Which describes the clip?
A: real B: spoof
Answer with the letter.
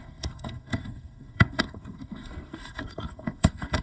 B